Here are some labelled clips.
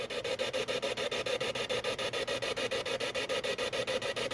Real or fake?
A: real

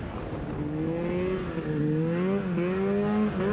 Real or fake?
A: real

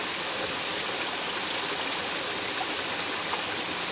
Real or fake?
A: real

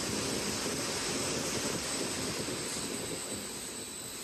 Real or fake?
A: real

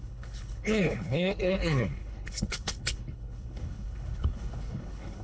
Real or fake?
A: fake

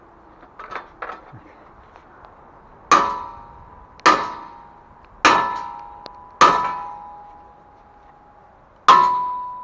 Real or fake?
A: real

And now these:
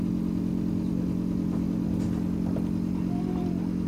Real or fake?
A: real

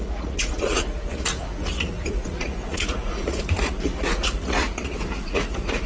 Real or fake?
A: fake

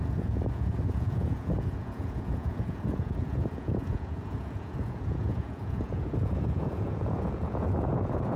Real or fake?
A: fake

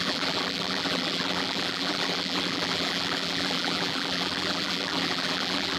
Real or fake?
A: fake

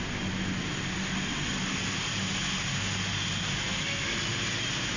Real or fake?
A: real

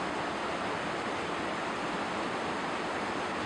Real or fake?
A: real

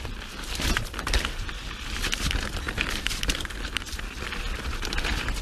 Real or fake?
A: real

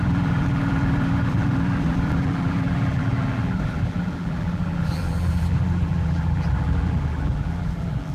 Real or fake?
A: fake